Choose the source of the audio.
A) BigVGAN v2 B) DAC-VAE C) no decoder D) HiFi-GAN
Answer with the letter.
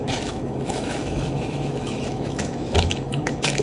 B